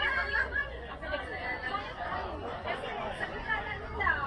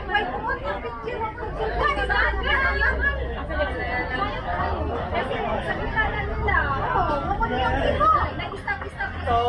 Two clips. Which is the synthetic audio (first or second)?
first